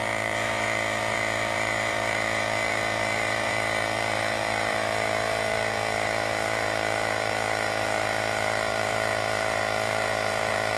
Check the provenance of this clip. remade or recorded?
remade